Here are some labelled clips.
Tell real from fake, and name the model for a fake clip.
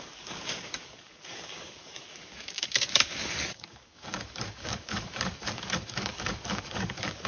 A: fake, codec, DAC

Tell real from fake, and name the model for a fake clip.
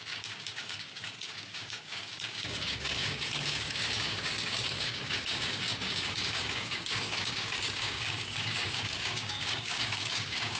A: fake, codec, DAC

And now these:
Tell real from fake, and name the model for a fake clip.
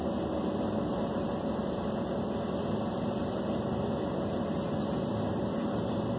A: real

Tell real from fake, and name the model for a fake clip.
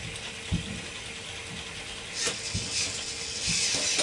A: real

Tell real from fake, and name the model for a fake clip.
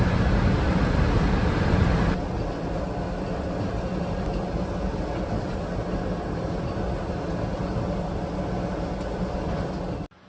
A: real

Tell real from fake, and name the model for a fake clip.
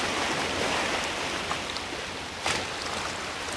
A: real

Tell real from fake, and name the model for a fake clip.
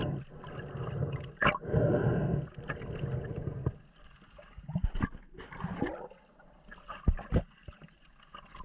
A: real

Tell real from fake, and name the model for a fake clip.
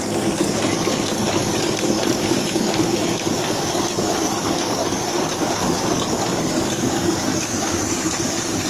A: fake, codec, DAC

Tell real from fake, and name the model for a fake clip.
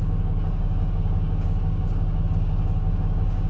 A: fake, codec, DAC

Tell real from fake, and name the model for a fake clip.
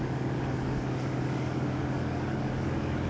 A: fake, codec, DAC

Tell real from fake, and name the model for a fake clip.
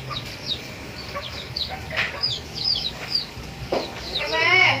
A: fake, codec, DAC